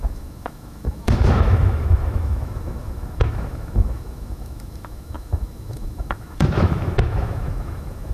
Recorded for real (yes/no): no